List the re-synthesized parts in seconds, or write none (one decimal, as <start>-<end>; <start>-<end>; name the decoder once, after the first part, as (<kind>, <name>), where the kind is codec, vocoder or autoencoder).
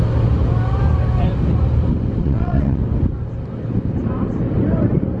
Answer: 2.2-2.8 (vocoder, WaveNeXt)